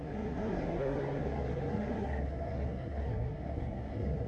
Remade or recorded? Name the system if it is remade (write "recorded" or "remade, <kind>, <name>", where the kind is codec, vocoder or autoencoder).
remade, codec, SNAC